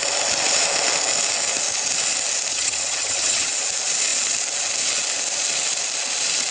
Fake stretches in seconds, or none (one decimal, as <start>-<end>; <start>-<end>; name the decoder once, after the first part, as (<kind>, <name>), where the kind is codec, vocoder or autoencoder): 2.5-3.5 (vocoder, HiFi-GAN)